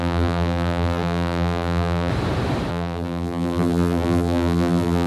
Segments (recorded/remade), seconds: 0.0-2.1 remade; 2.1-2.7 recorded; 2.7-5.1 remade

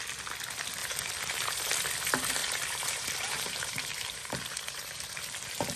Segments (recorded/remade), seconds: 0.0-0.8 recorded; 0.8-1.7 remade; 1.7-2.4 recorded; 2.4-5.2 remade; 5.2-5.8 recorded

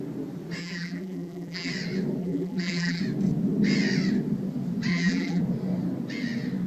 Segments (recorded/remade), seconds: 0.0-0.6 recorded; 0.6-1.7 remade; 1.7-2.2 recorded; 2.2-3.0 remade; 3.0-4.9 recorded; 4.9-5.4 remade; 5.4-6.7 recorded

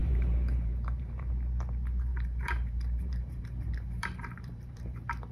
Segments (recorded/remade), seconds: 0.0-1.3 remade; 1.3-2.1 recorded; 2.1-5.3 remade

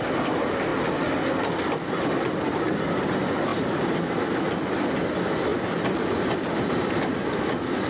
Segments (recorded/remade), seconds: 0.0-3.5 recorded; 3.5-4.2 remade; 4.2-5.5 recorded; 5.5-6.0 remade; 6.0-7.9 recorded

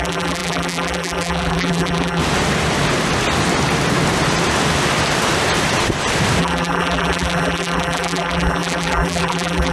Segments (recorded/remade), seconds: 0.0-2.2 remade; 2.2-6.4 recorded; 6.4-9.7 remade